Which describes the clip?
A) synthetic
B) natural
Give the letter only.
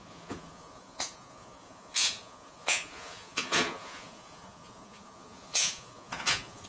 A